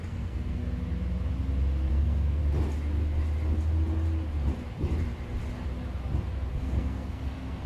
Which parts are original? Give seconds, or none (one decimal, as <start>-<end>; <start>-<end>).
0.6-1.9; 2.4-6.5